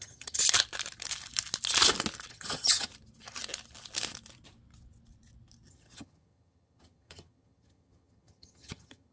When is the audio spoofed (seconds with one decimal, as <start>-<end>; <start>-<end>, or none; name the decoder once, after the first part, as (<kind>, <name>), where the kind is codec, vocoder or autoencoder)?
0.0-0.4 (vocoder, HiFi-GAN); 2.3-2.9; 5.7-9.1